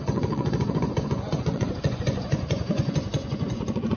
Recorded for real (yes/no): no